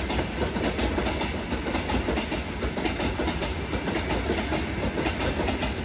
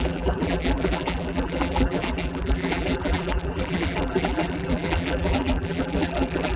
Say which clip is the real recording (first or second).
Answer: first